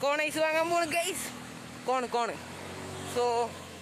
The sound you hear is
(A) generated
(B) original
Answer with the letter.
A